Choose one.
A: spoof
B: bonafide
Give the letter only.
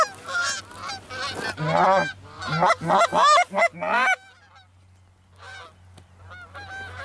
B